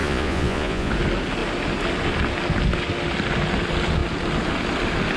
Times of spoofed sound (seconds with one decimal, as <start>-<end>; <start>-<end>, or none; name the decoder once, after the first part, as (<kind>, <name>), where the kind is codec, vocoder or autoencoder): 0.0-0.9 (vocoder, Vocos)